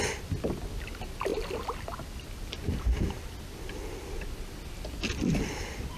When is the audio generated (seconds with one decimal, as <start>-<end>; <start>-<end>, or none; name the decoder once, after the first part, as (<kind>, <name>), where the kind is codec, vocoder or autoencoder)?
none